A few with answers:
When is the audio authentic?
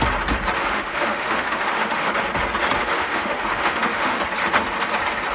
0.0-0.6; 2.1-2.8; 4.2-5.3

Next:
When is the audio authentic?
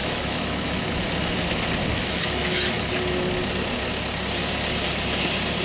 0.9-1.9; 2.9-5.6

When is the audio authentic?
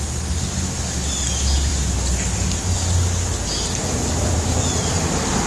0.0-5.5